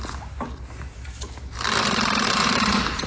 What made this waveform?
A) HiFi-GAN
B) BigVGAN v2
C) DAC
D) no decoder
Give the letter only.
D